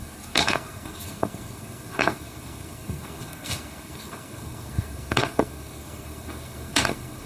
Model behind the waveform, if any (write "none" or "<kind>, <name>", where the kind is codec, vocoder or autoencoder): codec, SNAC